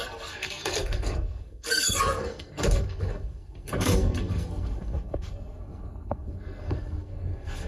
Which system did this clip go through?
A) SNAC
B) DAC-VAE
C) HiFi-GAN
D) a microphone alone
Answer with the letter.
A